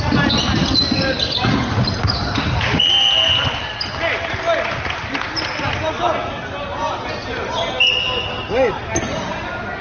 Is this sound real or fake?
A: real